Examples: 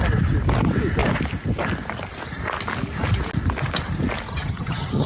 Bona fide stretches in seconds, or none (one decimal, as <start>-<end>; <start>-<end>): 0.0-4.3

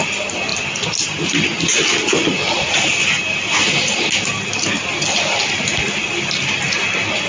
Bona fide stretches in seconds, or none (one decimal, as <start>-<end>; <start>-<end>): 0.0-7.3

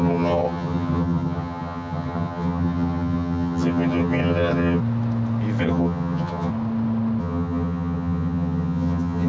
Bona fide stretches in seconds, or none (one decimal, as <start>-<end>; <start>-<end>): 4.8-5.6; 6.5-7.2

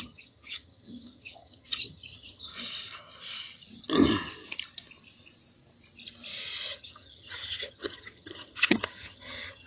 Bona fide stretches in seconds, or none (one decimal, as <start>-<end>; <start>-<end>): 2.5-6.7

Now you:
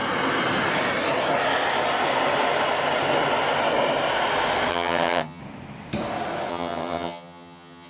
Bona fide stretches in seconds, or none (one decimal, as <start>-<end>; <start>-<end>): 0.0-4.7; 5.4-6.5

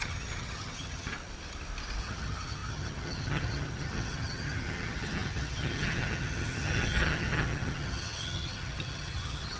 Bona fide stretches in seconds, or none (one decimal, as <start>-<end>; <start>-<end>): 1.1-2.0

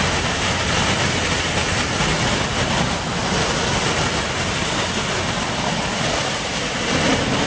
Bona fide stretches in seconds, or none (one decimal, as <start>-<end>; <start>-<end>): 0.0-7.5

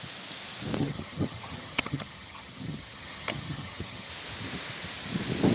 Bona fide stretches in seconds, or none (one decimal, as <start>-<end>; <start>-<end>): 0.0-0.8; 4.1-5.5